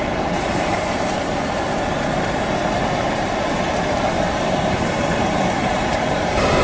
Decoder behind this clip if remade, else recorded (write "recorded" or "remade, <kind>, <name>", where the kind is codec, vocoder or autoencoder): remade, vocoder, BigVGAN v2